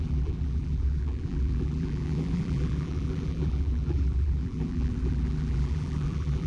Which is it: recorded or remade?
remade